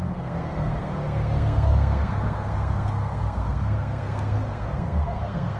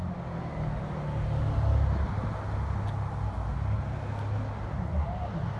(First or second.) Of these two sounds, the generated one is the first